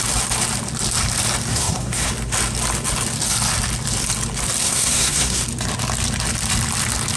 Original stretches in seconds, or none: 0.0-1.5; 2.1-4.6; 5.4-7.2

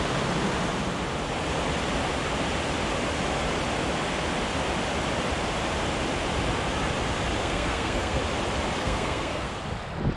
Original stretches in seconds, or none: 0.0-7.4; 8.2-8.8; 9.5-10.2